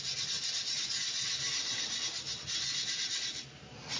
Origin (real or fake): real